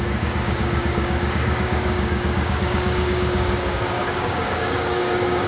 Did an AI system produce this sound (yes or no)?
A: yes